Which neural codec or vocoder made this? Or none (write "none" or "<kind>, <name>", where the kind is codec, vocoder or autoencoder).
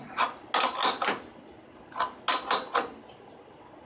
none